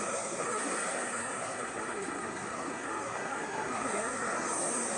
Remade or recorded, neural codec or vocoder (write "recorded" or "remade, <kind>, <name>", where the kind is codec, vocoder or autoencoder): remade, codec, SNAC